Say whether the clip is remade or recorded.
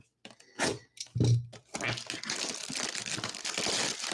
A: recorded